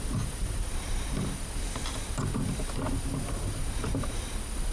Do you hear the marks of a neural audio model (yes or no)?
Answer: no